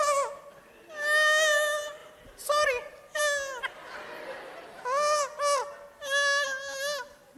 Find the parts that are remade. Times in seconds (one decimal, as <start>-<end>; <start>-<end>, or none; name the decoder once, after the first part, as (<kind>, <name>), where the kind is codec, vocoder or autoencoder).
2.0-3.2 (vocoder, BigVGAN v2)